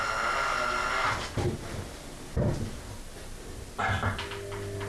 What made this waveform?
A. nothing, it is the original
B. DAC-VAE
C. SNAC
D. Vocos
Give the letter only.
A